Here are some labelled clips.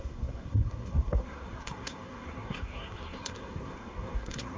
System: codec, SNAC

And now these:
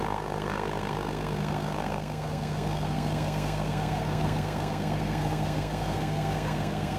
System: codec, SNAC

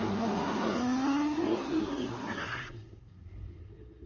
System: codec, SNAC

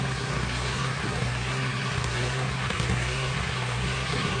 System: codec, SNAC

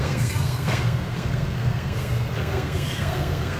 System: codec, SNAC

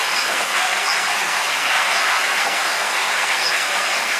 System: codec, SNAC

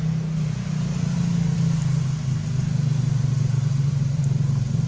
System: none